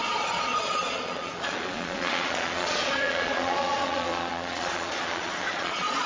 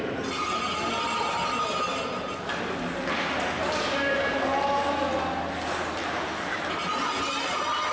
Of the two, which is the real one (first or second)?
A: second